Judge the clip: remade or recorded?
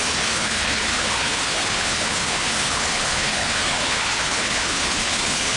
remade